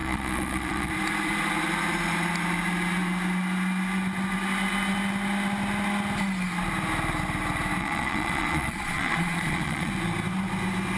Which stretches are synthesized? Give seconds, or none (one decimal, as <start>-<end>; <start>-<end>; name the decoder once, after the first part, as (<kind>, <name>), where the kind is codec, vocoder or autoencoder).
0.0-0.9 (vocoder, Vocos); 7.8-9.9